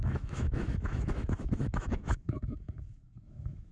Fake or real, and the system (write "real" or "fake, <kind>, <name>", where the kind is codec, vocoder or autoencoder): fake, autoencoder, DAC-VAE